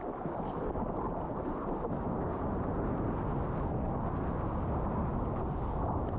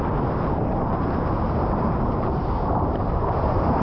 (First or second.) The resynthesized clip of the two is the second